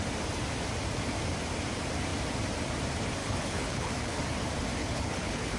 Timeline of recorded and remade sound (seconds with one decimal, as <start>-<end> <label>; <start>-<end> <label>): 0.0-3.2 recorded; 3.2-4.2 remade; 4.2-4.8 recorded; 4.8-5.6 remade